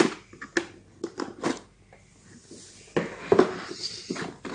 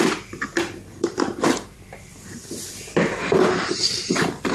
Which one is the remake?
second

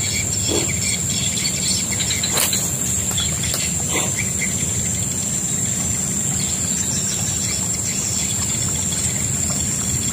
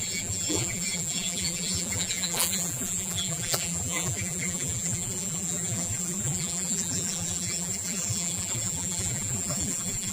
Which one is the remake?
second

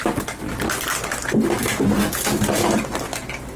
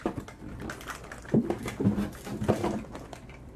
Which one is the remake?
second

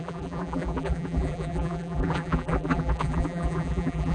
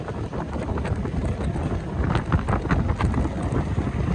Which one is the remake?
first